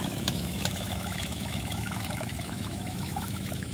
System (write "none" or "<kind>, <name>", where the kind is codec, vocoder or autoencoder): autoencoder, DAC-VAE